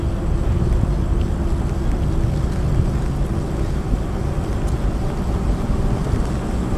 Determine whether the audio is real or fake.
real